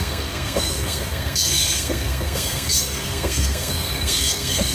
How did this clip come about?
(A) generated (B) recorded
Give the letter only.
A